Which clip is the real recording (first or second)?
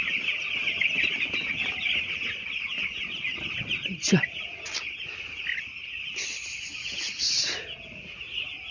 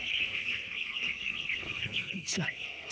first